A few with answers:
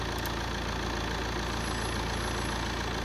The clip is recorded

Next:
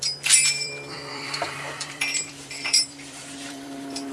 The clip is remade